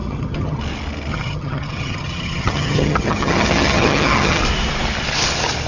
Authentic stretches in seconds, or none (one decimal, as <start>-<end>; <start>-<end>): 0.6-1.1; 4.4-5.7

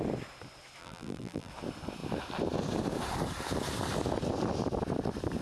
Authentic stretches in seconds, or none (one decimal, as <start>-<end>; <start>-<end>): 0.0-0.8; 1.5-5.4

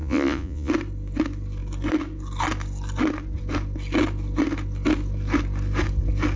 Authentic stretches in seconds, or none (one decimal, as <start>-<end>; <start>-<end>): 0.7-6.4

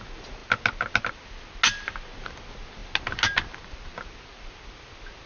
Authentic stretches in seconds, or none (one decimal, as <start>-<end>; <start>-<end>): 0.0-5.3

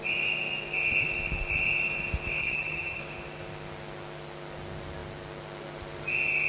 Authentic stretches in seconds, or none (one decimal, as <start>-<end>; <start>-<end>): 0.0-2.4; 3.0-6.5

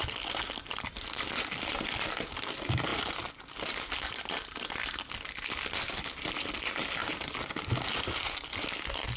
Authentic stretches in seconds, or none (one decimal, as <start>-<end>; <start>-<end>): 0.0-0.7; 2.9-7.9

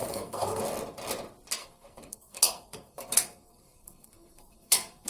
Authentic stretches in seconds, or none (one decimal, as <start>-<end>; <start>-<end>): 0.6-1.6

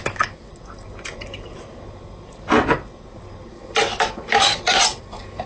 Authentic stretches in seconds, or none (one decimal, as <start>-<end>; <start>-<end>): 0.5-3.5; 4.5-5.0